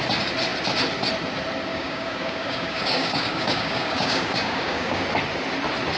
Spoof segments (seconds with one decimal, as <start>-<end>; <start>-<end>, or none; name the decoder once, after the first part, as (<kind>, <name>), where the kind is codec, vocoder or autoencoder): 1.7-5.0 (codec, DAC)

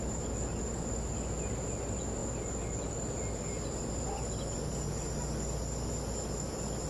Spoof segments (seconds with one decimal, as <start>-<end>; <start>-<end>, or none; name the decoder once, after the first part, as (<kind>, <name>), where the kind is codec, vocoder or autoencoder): none

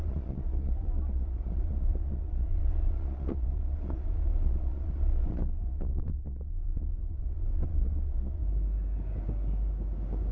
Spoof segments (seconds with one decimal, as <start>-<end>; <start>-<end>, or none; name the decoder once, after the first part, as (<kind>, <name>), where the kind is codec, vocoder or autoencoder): 0.0-8.4 (vocoder, Vocos)

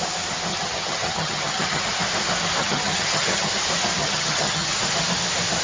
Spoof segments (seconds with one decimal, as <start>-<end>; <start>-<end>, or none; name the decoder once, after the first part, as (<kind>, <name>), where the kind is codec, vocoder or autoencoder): 0.5-1.8 (vocoder, HiFi-GAN); 2.6-3.5; 4.0-4.8

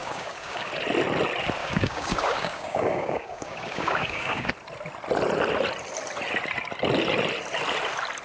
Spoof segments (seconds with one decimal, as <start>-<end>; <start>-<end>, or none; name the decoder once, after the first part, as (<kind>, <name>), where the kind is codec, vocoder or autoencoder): 0.0-0.7 (codec, DAC); 1.6-4.5

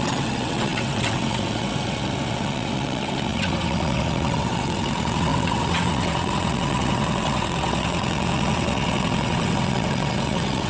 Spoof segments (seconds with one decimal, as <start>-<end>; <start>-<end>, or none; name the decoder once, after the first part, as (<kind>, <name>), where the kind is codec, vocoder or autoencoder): 0.0-10.7 (vocoder, WaveNeXt)

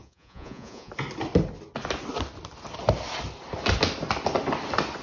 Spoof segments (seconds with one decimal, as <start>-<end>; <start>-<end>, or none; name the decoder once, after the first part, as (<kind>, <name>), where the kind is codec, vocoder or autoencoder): 0.0-0.9 (vocoder, Vocos)

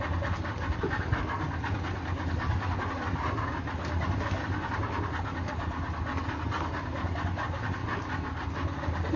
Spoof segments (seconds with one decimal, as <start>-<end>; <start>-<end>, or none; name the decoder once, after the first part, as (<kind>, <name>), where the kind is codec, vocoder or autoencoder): none